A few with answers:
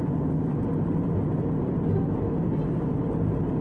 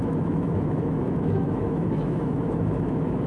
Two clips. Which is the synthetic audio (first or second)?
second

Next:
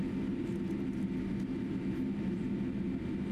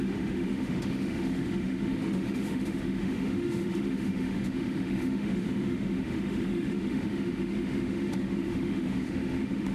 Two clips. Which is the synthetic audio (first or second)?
second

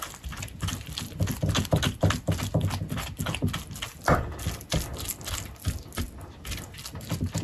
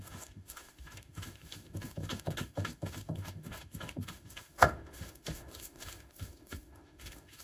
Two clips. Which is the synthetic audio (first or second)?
second